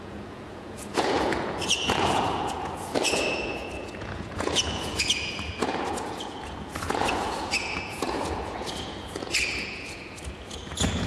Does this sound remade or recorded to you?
remade